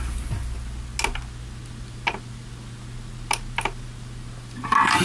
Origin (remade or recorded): recorded